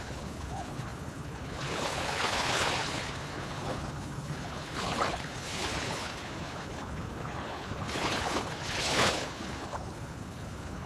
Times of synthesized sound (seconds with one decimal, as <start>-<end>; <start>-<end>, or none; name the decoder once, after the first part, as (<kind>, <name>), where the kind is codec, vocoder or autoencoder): 0.0-10.9 (codec, HILCodec)